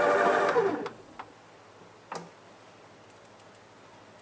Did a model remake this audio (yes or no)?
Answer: no